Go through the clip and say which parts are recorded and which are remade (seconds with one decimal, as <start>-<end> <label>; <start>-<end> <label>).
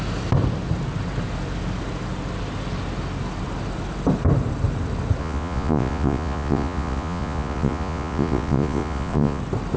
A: 0.0-5.2 recorded; 5.2-9.4 remade; 9.4-9.8 recorded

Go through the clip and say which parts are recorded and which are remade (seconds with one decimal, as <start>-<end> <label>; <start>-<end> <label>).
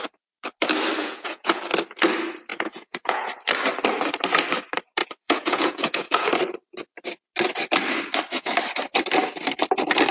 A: 0.0-1.0 recorded; 1.0-1.6 remade; 1.6-2.5 recorded; 2.5-3.3 remade; 3.3-5.0 recorded; 5.0-6.3 remade; 6.3-10.1 recorded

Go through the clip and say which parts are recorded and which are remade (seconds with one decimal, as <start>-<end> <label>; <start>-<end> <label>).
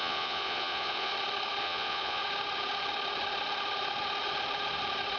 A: 0.0-1.1 remade; 1.1-1.6 recorded; 1.6-2.2 remade; 2.2-5.2 recorded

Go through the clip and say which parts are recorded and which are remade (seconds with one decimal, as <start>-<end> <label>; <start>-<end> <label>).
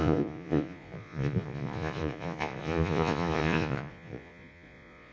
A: 0.0-5.1 remade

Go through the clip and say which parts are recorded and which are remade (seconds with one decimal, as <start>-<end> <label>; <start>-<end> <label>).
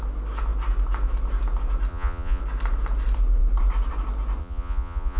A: 0.0-1.9 recorded; 1.9-2.4 remade; 2.4-4.4 recorded; 4.4-5.2 remade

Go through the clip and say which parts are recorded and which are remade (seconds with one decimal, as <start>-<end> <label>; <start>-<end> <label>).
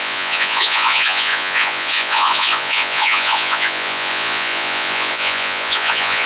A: 0.0-6.3 remade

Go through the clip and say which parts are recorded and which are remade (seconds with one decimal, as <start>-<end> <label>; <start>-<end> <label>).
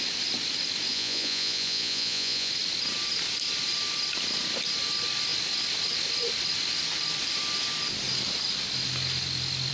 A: 0.0-0.9 recorded; 0.9-2.5 remade; 2.5-9.7 recorded